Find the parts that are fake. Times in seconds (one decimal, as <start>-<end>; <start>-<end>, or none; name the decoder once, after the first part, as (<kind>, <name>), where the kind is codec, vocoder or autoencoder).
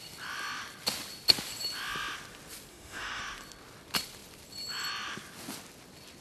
2.7-3.2 (autoencoder, DAC-VAE)